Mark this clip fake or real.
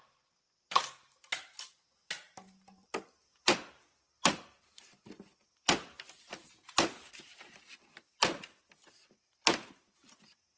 real